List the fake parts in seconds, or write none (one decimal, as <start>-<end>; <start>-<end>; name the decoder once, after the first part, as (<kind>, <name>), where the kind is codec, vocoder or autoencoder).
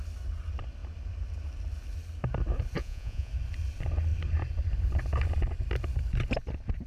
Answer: 2.8-3.3 (vocoder, Vocos)